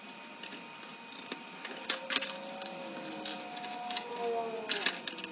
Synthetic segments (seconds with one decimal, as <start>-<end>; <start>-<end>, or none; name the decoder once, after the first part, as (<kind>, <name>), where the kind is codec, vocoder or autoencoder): none